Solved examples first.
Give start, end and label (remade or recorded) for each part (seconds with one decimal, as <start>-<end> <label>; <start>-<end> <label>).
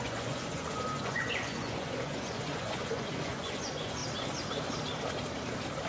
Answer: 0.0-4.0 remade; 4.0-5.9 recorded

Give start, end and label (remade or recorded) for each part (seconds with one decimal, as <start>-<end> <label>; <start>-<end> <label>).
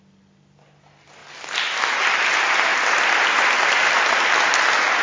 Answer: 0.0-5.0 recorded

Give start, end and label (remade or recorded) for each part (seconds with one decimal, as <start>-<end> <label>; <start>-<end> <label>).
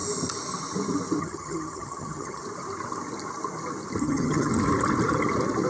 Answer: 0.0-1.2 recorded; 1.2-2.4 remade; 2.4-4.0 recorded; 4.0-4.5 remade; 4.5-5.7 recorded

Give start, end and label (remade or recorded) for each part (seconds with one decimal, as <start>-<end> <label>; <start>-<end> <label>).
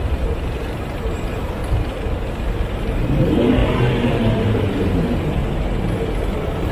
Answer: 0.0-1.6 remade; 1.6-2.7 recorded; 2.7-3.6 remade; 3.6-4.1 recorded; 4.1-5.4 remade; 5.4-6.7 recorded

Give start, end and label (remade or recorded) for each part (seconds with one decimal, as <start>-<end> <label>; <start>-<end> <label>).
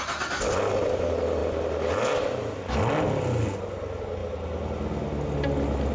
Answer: 0.0-5.9 recorded